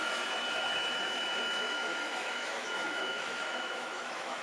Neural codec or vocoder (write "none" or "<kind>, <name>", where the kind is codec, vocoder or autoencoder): autoencoder, DAC-VAE